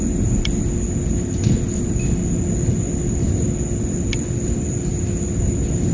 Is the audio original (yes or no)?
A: yes